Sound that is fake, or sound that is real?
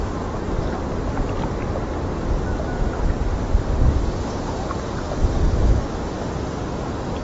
real